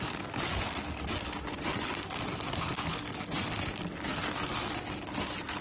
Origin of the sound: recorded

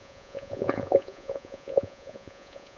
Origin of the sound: remade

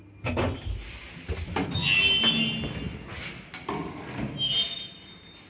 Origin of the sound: recorded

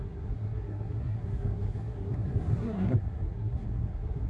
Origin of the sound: remade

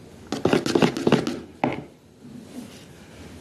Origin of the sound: recorded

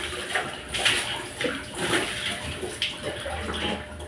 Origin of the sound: remade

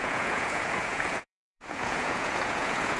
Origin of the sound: remade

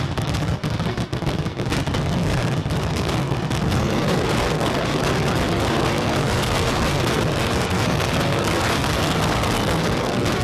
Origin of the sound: remade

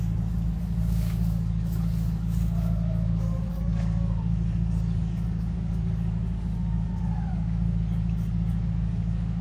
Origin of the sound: remade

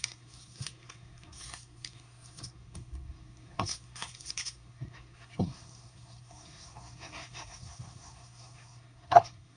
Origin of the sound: remade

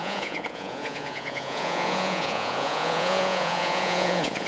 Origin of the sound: remade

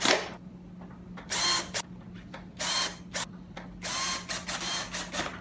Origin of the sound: recorded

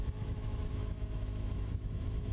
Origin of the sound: remade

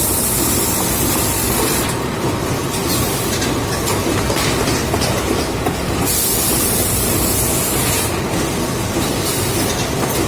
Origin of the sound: recorded